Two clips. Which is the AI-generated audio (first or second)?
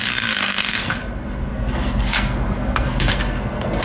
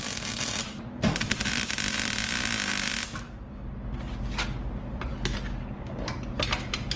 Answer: first